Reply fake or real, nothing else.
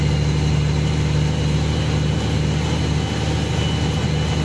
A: real